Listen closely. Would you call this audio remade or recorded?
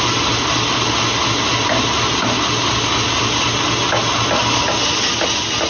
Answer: recorded